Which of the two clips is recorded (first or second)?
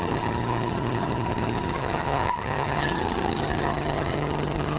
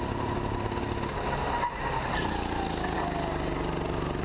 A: second